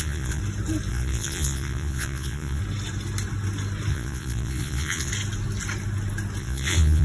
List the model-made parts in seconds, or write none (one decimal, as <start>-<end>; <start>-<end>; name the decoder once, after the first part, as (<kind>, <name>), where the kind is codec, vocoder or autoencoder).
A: 0.0-0.4 (vocoder, Vocos); 0.9-2.6; 3.9-5.1; 6.4-7.0